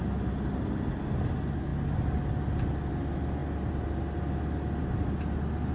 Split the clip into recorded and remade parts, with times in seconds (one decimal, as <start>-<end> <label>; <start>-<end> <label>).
0.0-5.7 recorded